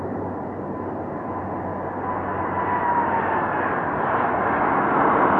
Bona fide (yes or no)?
yes